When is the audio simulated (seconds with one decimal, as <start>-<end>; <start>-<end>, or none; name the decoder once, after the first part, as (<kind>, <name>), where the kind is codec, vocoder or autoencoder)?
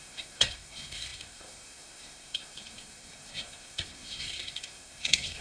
0.0-5.4 (codec, SNAC)